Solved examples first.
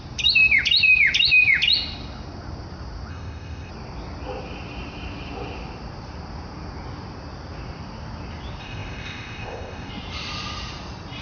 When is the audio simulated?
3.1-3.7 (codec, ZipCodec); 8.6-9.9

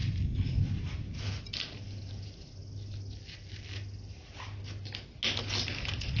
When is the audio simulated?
none

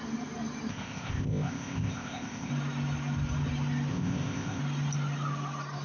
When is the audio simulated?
0.7-2.5 (codec, ZipCodec); 3.9-4.6

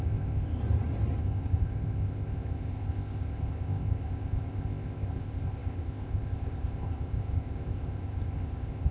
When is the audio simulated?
0.0-0.6 (codec, ZipCodec); 1.2-8.9

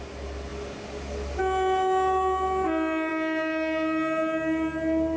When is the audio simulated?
none

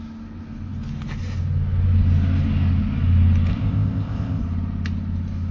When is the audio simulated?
3.5-4.4 (codec, ZipCodec)

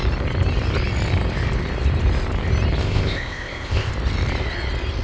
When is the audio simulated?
2.8-3.9 (codec, ZipCodec)

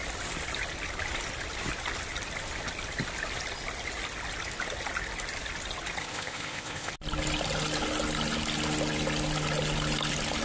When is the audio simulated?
6.0-6.9 (codec, ZipCodec)